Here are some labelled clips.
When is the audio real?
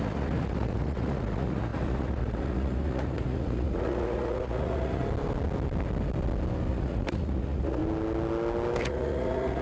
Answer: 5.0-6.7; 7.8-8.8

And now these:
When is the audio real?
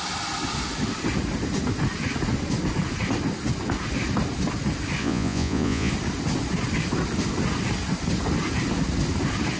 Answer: 0.0-5.0; 5.9-9.6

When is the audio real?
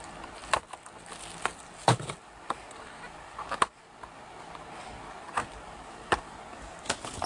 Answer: 0.0-7.3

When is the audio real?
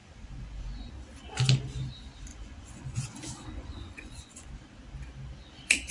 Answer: 0.9-2.3; 4.5-5.9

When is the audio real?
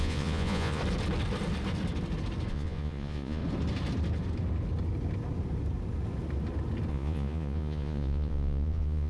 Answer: 0.8-2.5; 3.4-6.9